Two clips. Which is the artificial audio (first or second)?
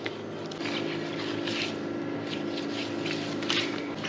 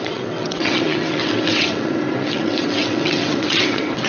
second